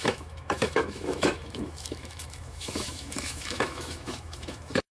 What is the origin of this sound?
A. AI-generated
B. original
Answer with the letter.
A